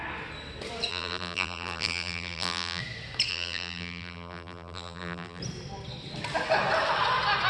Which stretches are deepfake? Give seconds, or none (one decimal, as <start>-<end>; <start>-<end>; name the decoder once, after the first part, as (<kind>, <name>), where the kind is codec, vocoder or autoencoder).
0.9-2.8 (vocoder, BigVGAN v2); 3.3-5.4

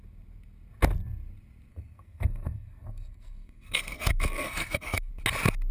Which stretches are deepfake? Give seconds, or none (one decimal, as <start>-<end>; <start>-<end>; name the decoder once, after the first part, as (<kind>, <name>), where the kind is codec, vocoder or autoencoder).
1.7-5.1 (codec, SNAC)

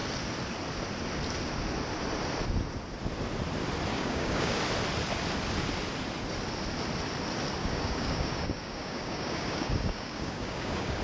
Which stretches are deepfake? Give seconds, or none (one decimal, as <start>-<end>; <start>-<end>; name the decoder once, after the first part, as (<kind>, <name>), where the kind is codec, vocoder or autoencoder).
3.9-4.6 (codec, DAC); 7.6-11.0